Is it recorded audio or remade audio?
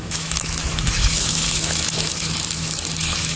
remade